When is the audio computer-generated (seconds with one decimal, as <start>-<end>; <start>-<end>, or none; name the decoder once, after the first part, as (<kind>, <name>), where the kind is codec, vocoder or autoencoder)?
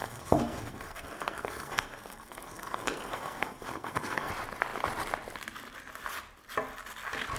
0.0-4.3 (codec, SNAC)